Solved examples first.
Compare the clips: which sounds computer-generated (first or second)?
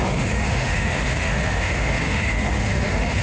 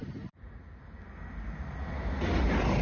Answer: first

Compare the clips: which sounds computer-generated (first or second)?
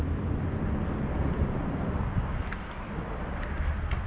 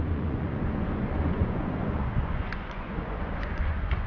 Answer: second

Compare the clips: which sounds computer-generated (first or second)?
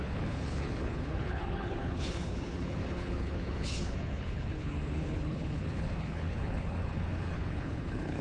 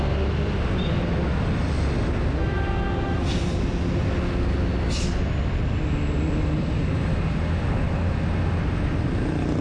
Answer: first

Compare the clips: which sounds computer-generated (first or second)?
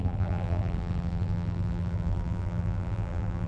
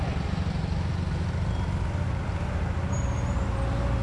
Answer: first